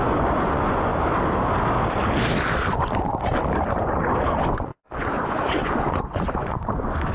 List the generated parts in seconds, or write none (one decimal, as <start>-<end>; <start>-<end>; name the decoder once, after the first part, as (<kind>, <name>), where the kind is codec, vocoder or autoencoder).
0.0-0.9 (vocoder, Vocos); 2.6-3.1; 3.7-7.1